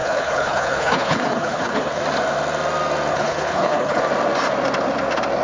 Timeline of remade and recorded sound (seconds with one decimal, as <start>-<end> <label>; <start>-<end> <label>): 0.0-2.0 remade; 2.0-3.1 recorded; 3.1-4.0 remade; 4.0-5.4 recorded